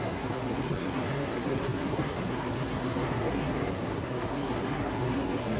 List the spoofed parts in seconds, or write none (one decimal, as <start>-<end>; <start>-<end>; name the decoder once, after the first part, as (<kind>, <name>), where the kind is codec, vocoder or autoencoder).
0.0-5.6 (codec, SNAC)